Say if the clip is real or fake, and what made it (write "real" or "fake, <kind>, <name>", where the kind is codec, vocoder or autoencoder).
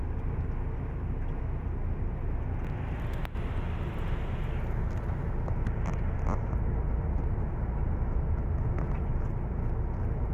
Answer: real